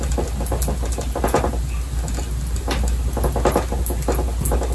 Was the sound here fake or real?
real